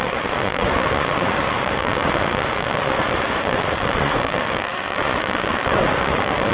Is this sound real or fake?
fake